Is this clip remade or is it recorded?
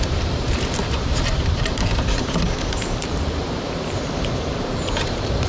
remade